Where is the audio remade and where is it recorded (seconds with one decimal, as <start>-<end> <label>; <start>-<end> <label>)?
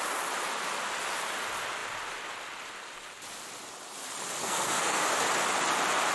0.0-4.4 recorded; 4.4-5.0 remade; 5.0-6.1 recorded